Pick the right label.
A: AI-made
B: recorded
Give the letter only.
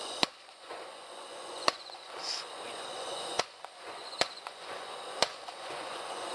A